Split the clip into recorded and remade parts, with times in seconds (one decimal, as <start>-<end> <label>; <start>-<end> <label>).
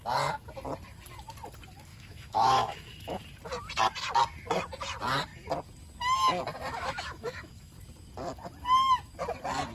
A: 0.0-1.9 recorded; 1.9-3.2 remade; 3.2-6.7 recorded; 6.7-7.7 remade; 7.7-9.7 recorded